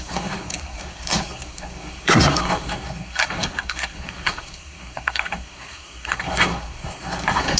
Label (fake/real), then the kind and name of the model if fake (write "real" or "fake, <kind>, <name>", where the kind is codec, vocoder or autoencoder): fake, codec, SNAC